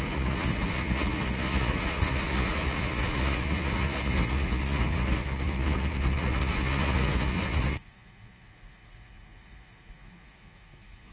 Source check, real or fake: fake